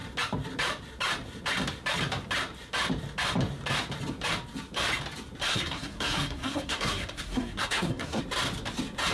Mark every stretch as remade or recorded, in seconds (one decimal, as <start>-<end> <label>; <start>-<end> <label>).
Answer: 0.0-5.5 recorded; 5.5-8.2 remade; 8.2-9.1 recorded